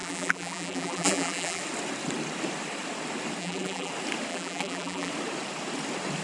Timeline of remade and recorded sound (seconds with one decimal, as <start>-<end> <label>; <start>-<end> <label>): 0.0-1.6 remade; 1.6-3.4 recorded; 3.4-3.9 remade; 3.9-4.3 recorded; 4.3-5.1 remade; 5.1-6.2 recorded